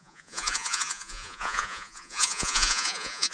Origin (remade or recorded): remade